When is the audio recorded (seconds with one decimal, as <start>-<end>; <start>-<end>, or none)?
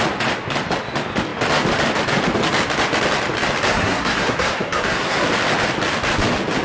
0.0-3.7; 5.2-6.6